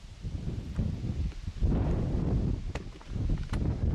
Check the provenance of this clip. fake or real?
real